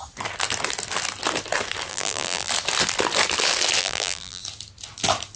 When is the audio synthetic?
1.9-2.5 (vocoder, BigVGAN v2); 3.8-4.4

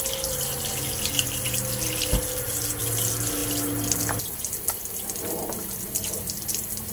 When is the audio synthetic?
none